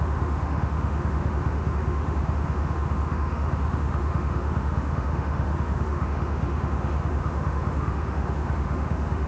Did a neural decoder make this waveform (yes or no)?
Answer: yes